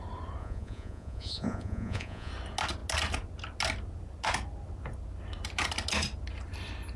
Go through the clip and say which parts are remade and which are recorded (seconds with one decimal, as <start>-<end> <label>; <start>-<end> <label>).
0.0-0.4 recorded; 0.4-2.3 remade; 2.3-7.0 recorded